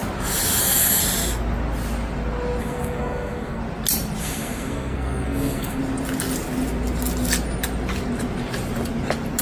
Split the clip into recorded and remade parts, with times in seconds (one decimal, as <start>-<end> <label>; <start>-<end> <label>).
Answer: 0.0-0.6 recorded; 0.6-1.0 remade; 1.0-2.6 recorded; 2.6-3.6 remade; 3.6-4.2 recorded; 4.2-5.8 remade; 5.8-9.4 recorded